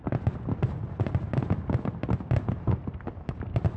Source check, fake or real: real